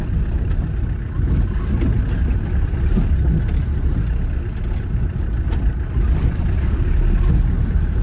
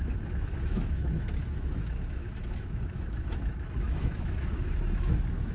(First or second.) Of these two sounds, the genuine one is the first